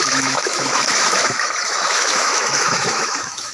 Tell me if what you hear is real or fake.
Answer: fake